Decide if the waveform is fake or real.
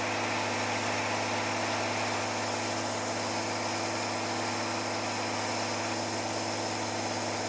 real